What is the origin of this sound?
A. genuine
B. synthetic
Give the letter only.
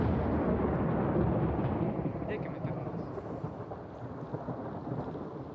A